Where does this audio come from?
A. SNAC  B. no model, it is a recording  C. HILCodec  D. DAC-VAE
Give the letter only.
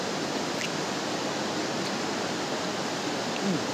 B